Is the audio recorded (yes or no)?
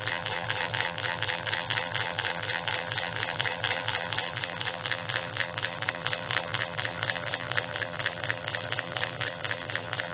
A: no